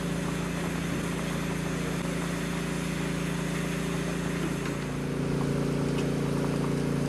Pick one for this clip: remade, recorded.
recorded